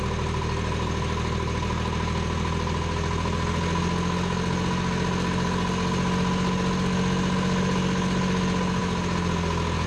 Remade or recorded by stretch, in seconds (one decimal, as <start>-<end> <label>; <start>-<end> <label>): 0.0-9.9 recorded